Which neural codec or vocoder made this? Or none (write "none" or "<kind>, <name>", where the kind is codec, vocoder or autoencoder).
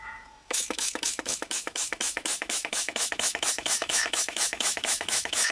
autoencoder, DAC-VAE